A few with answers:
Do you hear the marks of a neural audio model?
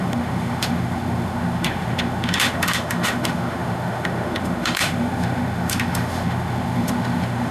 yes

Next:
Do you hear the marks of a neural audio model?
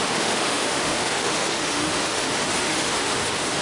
yes